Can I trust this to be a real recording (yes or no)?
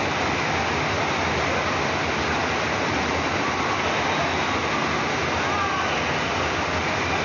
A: yes